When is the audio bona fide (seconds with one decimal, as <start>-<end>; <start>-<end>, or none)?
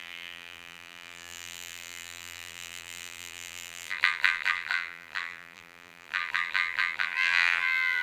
none